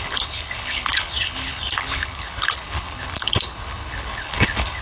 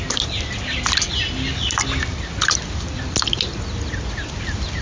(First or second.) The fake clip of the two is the first